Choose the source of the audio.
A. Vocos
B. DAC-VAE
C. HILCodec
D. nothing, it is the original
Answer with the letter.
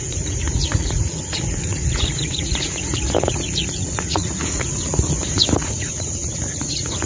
A